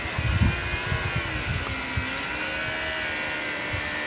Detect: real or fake real